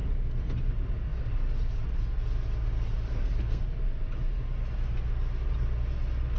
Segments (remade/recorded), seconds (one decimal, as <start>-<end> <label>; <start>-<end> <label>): 0.0-3.1 recorded; 3.1-3.6 remade; 3.6-6.4 recorded